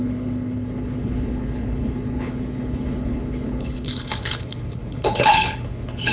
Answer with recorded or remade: remade